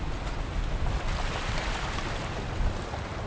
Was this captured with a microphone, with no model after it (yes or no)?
yes